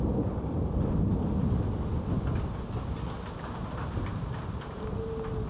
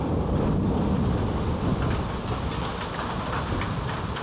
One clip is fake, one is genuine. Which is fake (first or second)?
second